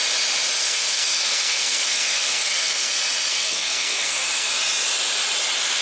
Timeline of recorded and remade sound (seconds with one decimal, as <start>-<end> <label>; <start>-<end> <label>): 0.0-0.6 recorded; 0.6-2.9 remade; 2.9-3.3 recorded; 3.3-4.5 remade; 4.5-5.8 recorded